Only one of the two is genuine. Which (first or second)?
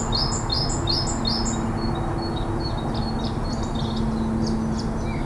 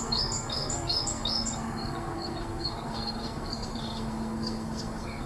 first